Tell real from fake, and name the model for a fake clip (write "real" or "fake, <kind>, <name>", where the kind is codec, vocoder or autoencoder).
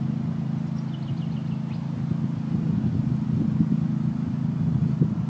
real